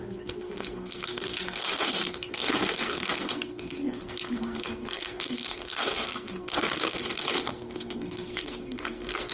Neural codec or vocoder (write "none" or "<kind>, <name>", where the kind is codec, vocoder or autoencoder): codec, SNAC